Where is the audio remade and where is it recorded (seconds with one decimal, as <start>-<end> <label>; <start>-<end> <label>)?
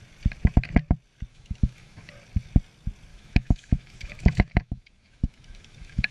0.0-1.3 recorded; 1.3-2.1 remade; 2.1-3.1 recorded; 3.1-6.1 remade